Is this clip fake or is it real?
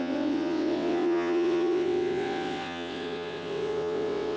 fake